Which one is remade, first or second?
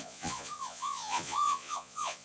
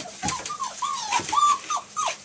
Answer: first